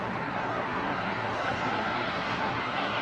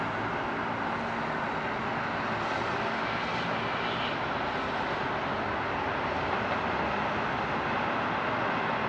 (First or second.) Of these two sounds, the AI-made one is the first